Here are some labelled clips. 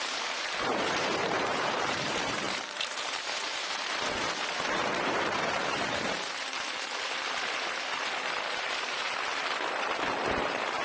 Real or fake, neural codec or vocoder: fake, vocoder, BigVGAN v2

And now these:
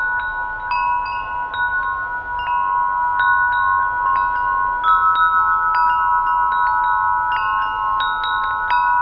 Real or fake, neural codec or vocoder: real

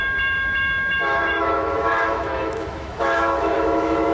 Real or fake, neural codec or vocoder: fake, autoencoder, DAC-VAE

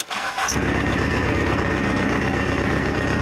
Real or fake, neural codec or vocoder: fake, codec, SNAC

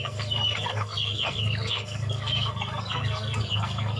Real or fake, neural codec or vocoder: fake, codec, SNAC